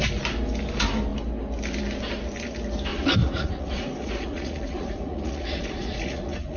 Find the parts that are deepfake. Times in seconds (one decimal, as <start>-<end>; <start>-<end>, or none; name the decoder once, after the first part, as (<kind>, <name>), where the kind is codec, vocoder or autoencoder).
2.9-6.6 (vocoder, Vocos)